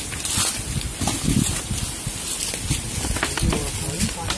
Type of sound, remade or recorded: recorded